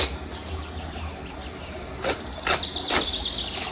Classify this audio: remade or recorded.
recorded